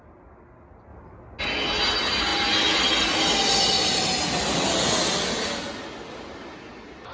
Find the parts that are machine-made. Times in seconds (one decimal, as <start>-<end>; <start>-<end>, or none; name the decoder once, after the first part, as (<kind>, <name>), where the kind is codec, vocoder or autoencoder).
none